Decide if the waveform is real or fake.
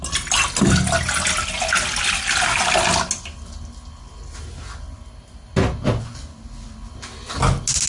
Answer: real